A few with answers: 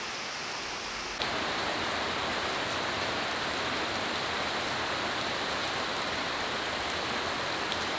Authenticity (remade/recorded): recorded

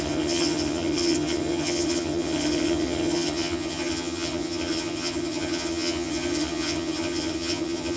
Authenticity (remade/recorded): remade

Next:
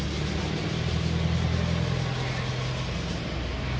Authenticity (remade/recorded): recorded